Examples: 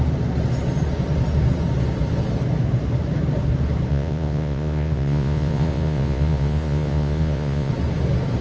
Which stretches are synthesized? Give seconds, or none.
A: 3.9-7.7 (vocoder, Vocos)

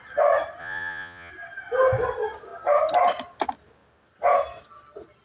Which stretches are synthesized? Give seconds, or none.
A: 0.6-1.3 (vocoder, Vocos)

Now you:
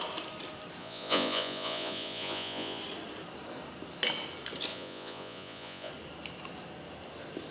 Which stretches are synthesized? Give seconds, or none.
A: 0.8-2.8 (vocoder, Vocos); 4.7-5.9

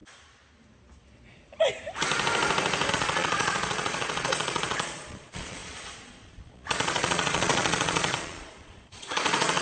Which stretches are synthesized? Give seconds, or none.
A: 2.9-9.6 (vocoder, Vocos)